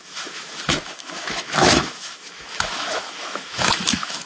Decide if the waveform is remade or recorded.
remade